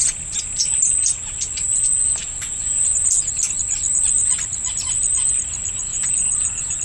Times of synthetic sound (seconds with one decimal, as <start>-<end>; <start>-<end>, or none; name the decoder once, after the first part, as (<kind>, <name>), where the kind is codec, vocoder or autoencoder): 2.2-3.3 (vocoder, Vocos); 5.9-6.8